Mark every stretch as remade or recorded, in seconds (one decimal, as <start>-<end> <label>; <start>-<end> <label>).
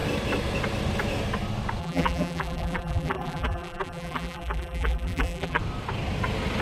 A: 0.0-1.8 recorded; 1.8-5.6 remade; 5.6-6.6 recorded